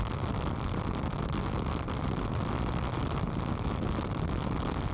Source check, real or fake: real